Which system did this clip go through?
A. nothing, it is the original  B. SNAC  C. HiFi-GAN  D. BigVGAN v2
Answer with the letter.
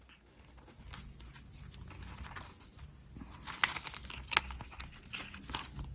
A